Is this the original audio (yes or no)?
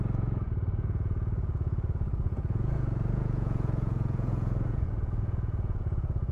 no